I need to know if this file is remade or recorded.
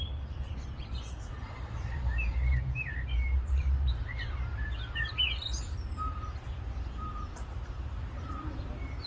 remade